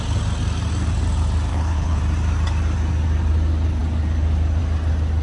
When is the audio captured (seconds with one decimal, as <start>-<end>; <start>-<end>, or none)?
0.0-1.5; 2.0-5.2